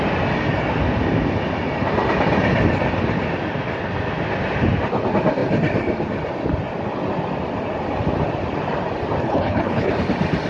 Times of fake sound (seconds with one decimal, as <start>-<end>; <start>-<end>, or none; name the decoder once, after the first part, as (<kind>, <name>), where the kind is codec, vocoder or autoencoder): 9.2-9.9 (codec, HILCodec)